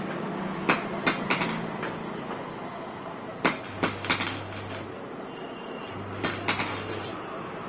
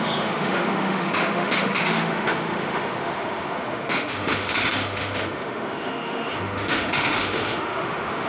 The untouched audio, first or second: first